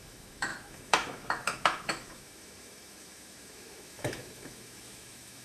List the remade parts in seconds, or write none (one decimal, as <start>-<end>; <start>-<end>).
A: 0.0-5.4